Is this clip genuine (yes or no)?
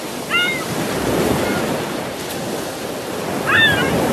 yes